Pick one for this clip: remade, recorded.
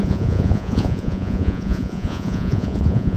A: remade